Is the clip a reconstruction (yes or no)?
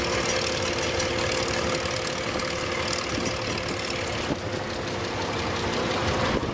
no